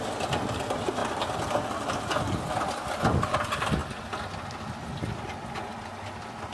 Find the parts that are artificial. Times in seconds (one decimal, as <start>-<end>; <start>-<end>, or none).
none